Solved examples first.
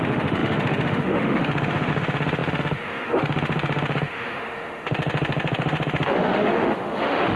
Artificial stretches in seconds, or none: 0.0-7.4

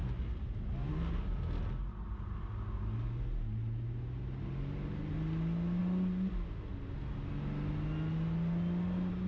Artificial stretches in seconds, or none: none